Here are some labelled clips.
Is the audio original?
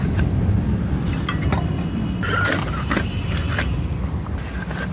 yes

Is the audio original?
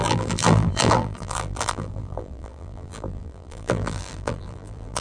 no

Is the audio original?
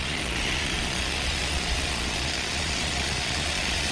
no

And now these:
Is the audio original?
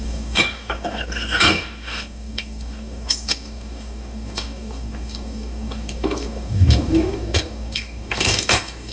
no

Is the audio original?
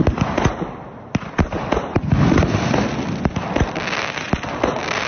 yes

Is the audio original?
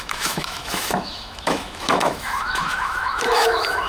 no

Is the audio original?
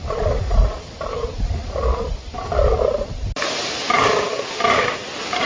yes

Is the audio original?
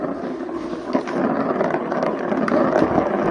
yes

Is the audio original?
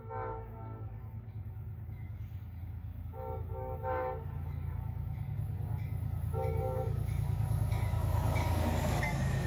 no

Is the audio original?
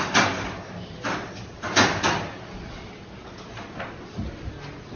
yes